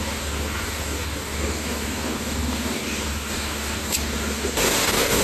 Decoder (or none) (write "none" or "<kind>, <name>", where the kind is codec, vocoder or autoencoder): codec, DAC